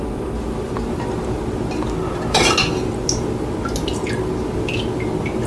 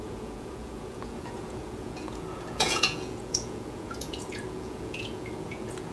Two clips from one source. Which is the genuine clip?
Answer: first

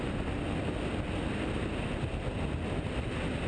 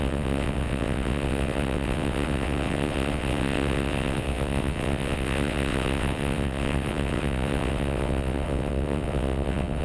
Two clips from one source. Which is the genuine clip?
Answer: first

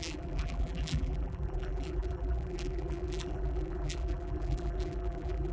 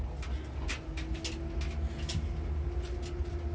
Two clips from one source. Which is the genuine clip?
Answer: second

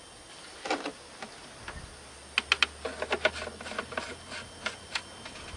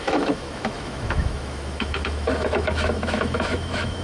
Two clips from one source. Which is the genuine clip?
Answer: first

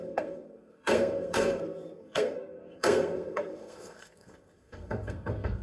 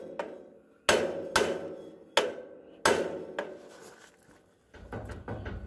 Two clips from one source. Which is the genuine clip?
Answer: second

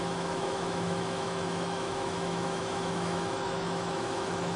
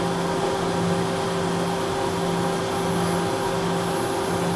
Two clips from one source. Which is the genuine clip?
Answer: second